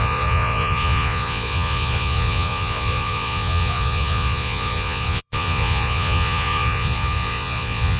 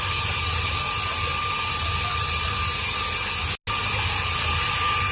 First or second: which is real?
second